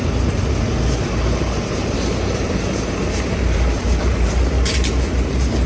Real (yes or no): no